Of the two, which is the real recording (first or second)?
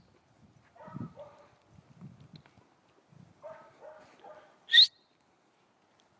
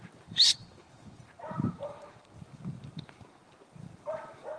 first